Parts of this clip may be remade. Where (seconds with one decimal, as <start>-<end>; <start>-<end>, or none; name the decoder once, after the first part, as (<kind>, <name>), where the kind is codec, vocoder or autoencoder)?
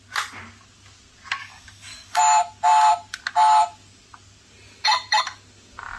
1.4-2.2 (codec, DAC)